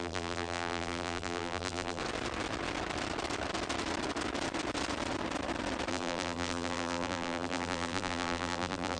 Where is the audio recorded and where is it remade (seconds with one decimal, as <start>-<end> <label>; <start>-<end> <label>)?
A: 0.0-2.0 remade; 2.0-5.9 recorded; 5.9-9.0 remade